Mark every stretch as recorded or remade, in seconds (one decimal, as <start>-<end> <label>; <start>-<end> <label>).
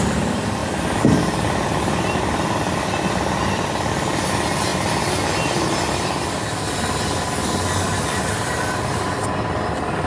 0.0-10.1 recorded